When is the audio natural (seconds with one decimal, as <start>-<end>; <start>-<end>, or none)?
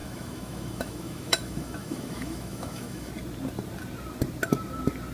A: 3.1-5.1